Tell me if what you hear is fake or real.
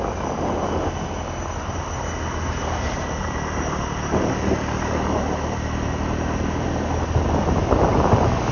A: real